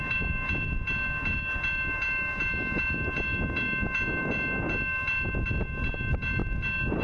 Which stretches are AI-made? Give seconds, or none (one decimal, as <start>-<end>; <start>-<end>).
none